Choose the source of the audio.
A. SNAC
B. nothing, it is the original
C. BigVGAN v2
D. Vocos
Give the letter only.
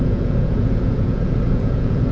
D